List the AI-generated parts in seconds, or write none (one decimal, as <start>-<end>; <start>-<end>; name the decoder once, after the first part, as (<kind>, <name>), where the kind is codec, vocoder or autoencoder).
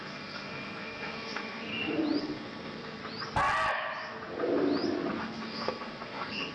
0.0-1.7 (codec, SNAC); 2.2-3.0; 5.2-6.5